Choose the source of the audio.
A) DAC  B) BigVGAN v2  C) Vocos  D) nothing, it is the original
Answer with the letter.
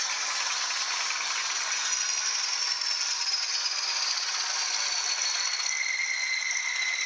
D